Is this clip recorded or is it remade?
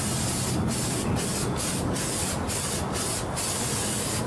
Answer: remade